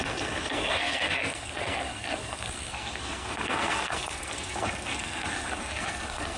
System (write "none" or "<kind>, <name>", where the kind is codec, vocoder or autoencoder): codec, SNAC